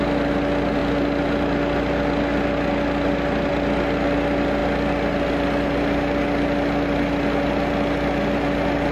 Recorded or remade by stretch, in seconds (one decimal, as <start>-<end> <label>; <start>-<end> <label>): 0.0-8.9 recorded